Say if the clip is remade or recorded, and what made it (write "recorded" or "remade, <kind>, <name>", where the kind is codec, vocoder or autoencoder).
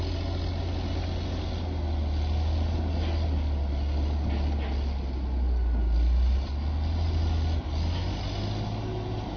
recorded